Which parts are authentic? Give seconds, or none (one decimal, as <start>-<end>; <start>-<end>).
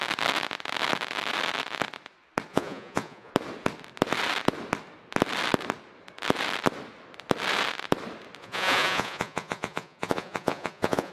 0.0-2.5; 3.3-8.4